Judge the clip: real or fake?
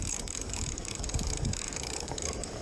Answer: fake